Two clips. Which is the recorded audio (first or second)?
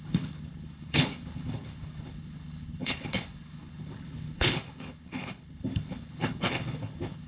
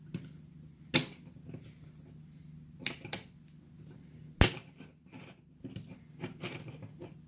second